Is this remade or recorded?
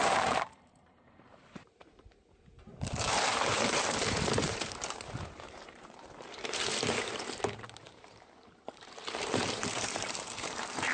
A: remade